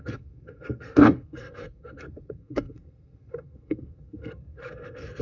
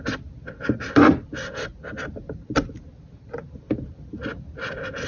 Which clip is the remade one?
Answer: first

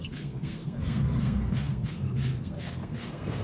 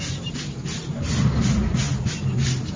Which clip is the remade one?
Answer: first